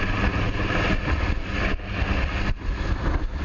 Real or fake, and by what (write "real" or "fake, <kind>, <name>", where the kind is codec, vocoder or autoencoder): real